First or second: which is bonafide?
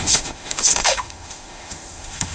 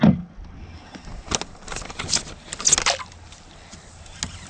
second